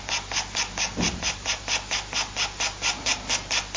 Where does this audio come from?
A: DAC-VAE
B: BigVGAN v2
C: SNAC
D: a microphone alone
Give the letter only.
D